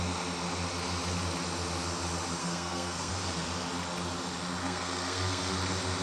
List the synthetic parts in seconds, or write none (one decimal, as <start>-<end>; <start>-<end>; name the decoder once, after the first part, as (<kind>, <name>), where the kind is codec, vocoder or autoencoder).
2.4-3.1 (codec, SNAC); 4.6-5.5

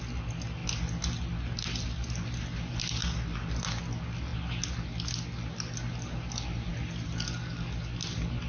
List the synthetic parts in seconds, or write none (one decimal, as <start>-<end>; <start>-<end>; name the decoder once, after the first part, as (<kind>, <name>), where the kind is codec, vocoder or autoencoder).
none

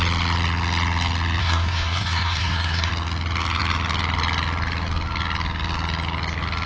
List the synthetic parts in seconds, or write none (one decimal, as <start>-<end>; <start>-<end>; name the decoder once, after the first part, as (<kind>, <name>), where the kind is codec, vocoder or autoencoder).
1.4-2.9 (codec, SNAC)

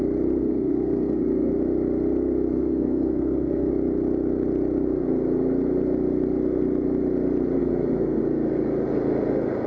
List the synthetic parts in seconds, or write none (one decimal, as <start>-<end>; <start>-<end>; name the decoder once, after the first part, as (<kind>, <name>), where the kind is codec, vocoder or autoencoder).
0.4-1.5 (codec, SNAC); 2.5-3.7; 7.6-8.2

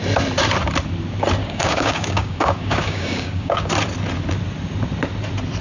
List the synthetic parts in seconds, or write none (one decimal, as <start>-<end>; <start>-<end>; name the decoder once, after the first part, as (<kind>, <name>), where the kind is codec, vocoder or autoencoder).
1.4-3.7 (codec, DAC)

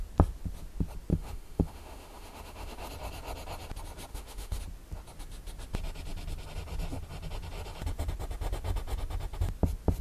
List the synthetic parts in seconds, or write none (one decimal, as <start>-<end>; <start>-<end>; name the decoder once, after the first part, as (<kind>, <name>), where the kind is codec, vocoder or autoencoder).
1.1-2.9 (autoencoder, DAC-VAE); 4.1-4.6

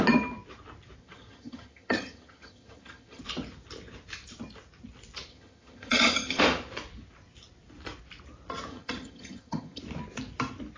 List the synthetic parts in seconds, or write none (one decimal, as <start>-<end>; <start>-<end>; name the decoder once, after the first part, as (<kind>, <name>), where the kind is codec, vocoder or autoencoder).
1.0-3.2 (vocoder, HiFi-GAN); 5.3-6.4; 8.7-9.8